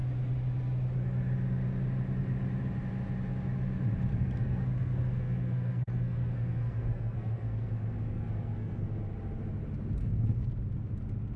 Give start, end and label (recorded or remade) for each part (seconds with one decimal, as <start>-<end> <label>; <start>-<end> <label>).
0.0-4.1 recorded; 4.1-9.0 remade; 9.0-10.0 recorded; 10.0-10.5 remade; 10.5-11.4 recorded